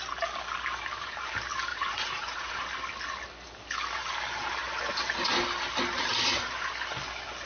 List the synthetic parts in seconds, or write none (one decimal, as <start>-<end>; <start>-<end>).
1.7-2.5

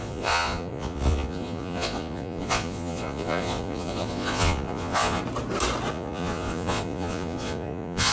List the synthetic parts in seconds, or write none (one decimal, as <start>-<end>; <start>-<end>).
0.0-5.2; 5.9-8.1

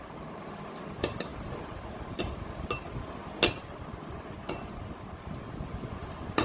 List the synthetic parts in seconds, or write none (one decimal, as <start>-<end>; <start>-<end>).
4.0-4.8

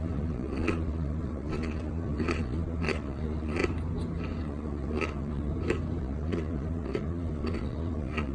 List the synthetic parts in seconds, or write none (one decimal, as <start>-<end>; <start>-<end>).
0.0-3.6; 4.4-5.5; 6.0-8.3

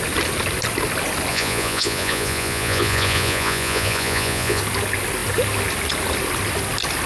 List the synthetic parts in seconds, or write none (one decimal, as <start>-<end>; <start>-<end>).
1.3-4.6

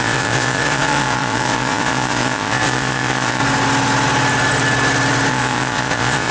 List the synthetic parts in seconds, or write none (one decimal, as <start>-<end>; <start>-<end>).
0.0-3.4; 5.3-6.3

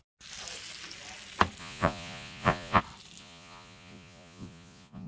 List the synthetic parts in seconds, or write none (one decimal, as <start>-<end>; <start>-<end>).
1.6-2.8; 3.2-5.1

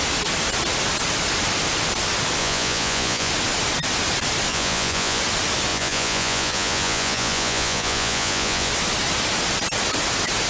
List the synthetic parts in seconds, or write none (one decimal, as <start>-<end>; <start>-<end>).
2.4-3.3; 4.5-5.2; 5.7-8.7